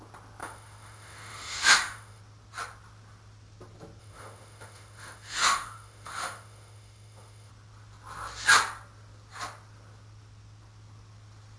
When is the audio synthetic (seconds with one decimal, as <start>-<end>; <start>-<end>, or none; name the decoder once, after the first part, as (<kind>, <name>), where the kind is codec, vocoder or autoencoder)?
0.4-2.2 (autoencoder, DAC-VAE); 4.0-7.5